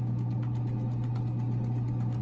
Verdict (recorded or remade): recorded